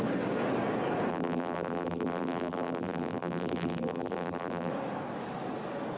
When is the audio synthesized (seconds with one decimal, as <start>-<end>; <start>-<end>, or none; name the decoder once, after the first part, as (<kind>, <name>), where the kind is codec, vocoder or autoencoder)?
1.1-4.7 (vocoder, BigVGAN v2)

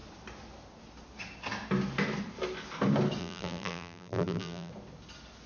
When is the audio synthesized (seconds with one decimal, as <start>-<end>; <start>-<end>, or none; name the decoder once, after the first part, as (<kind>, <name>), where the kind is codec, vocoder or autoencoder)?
3.2-4.7 (vocoder, BigVGAN v2)

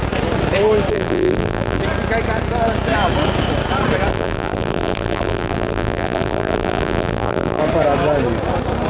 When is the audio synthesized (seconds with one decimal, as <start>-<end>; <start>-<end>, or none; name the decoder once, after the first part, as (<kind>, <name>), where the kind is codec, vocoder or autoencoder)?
0.9-1.8 (vocoder, BigVGAN v2); 4.1-7.6

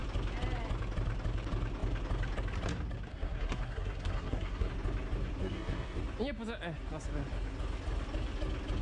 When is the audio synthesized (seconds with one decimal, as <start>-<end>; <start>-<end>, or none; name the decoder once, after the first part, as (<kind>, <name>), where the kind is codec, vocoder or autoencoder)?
3.1-4.7 (codec, SNAC); 5.4-6.0